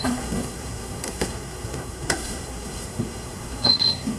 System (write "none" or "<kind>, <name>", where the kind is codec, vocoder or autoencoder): codec, SNAC